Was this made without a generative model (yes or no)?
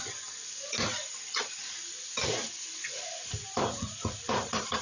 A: yes